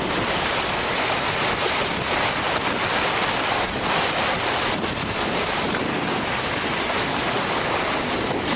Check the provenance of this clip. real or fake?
real